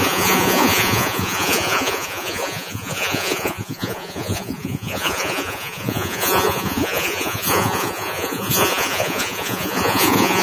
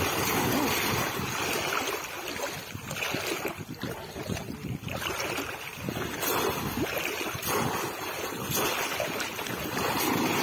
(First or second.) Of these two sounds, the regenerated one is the first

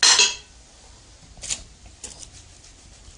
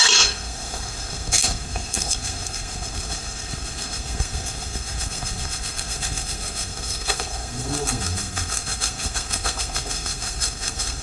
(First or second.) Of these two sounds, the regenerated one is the second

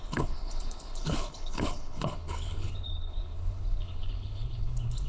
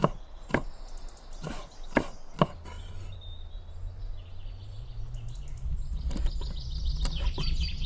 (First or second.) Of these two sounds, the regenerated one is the first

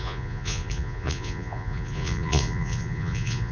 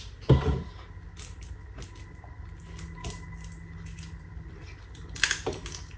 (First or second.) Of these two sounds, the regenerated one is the first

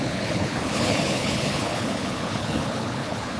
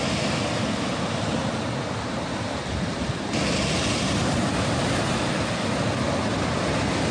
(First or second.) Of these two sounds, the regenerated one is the first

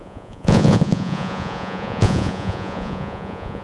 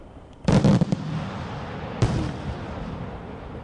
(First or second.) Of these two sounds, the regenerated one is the first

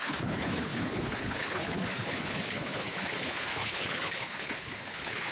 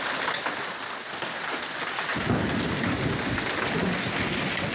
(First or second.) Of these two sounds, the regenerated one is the first